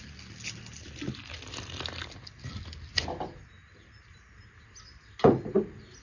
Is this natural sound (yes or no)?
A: yes